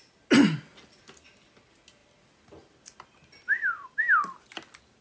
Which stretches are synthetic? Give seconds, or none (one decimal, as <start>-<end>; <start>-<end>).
none